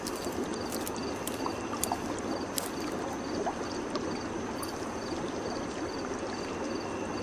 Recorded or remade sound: recorded